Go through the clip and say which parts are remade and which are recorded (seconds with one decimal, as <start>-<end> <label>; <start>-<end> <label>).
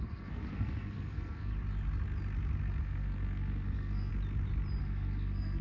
0.0-1.5 remade; 1.5-2.8 recorded; 2.8-4.1 remade; 4.1-4.8 recorded; 4.8-5.6 remade